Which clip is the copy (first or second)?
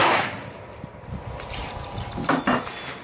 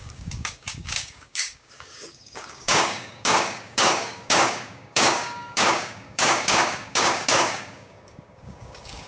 second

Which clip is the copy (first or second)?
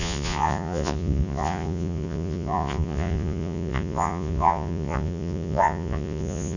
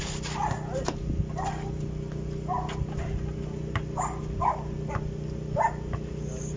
first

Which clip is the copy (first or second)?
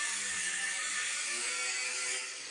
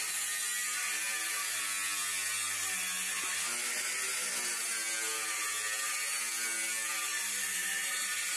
first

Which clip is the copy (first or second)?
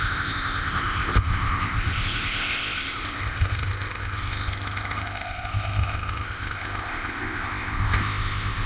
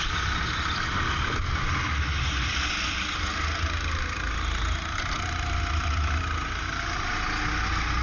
first